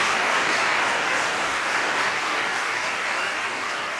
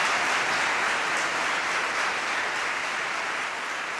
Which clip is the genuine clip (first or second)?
second